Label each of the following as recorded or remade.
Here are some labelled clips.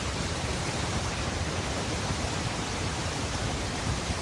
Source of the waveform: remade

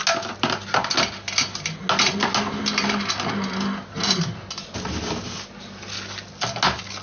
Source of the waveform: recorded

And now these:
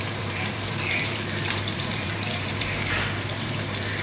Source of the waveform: remade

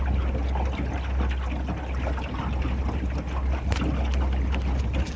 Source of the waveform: recorded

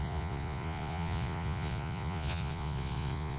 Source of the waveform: remade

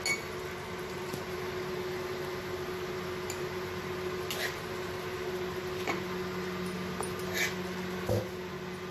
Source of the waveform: recorded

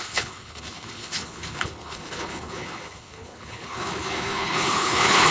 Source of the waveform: remade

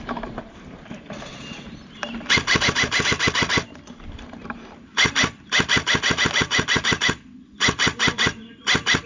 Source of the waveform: recorded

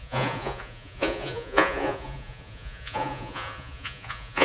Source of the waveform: remade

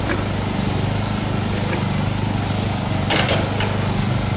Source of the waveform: recorded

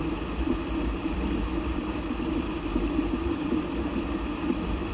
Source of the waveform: recorded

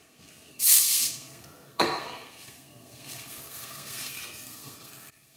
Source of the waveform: remade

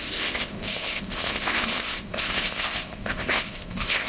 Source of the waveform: remade